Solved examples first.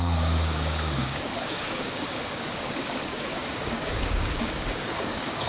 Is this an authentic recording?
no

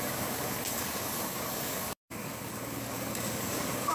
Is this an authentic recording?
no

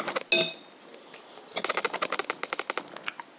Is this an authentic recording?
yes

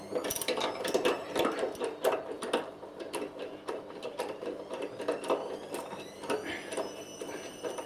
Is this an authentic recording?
yes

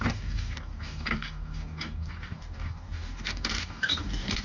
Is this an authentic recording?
no